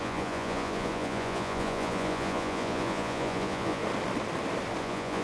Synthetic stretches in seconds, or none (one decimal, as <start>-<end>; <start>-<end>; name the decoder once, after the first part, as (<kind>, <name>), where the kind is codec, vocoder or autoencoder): 0.0-3.8 (vocoder, Vocos); 4.8-5.2